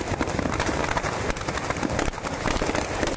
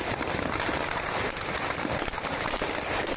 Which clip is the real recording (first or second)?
first